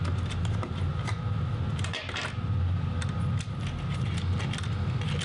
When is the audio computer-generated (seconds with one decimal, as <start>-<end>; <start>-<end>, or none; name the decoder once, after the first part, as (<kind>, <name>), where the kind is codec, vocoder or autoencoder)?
none